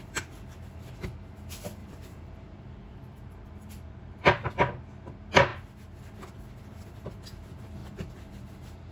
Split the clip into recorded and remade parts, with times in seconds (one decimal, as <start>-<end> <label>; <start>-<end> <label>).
0.0-1.8 recorded; 1.8-4.5 remade; 4.5-7.8 recorded; 7.8-8.9 remade